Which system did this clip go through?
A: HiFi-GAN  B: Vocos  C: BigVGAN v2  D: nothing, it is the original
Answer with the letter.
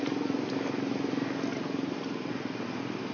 D